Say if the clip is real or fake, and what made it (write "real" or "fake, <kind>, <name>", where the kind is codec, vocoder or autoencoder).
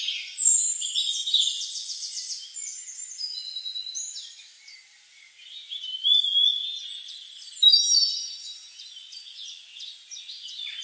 real